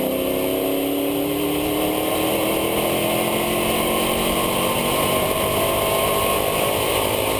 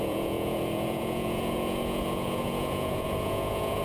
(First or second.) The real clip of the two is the first